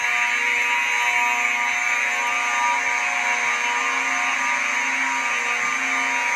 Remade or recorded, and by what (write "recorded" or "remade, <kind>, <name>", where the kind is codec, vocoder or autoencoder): recorded